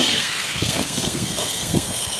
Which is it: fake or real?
fake